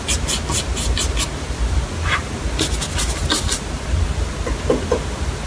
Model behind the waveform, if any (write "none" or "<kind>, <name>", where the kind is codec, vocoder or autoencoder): none